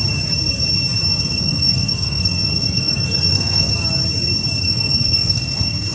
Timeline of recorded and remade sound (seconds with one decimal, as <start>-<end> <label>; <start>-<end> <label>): 0.0-1.2 recorded; 1.2-3.7 remade; 3.7-4.6 recorded; 4.6-5.9 remade